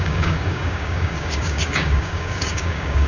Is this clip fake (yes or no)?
yes